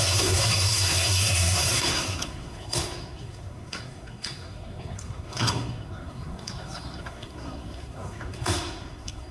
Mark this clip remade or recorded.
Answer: remade